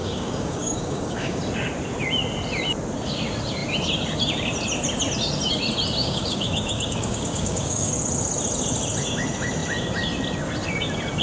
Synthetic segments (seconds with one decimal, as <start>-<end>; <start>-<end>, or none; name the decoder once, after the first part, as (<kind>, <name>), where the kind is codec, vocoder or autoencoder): 0.0-1.4 (codec, DAC); 6.0-7.9